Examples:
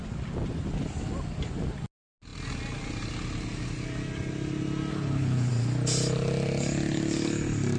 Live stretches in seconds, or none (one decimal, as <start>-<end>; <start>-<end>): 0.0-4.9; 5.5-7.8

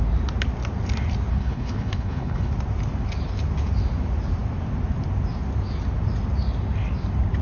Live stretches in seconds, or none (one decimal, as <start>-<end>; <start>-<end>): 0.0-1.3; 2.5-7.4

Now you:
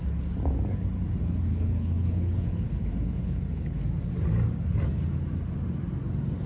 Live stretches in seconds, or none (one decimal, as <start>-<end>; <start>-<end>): 0.0-1.5; 3.8-6.5